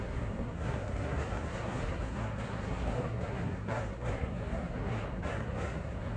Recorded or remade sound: remade